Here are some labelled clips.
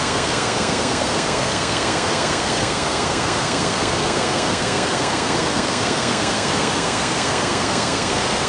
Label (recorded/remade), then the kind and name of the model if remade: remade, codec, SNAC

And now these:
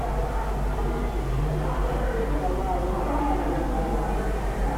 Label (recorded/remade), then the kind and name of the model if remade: recorded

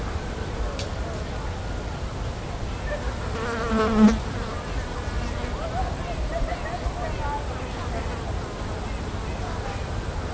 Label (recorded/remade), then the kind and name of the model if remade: recorded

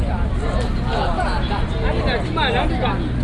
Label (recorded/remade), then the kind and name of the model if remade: recorded